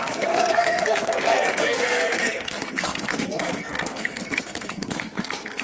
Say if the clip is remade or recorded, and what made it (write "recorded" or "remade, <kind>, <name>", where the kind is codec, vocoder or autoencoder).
remade, codec, SNAC